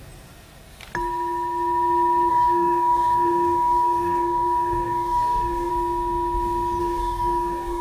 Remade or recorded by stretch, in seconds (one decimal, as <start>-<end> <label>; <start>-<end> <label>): 0.0-2.3 recorded; 2.3-5.7 remade; 5.7-6.8 recorded; 6.8-7.8 remade